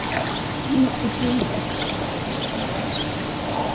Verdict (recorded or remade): recorded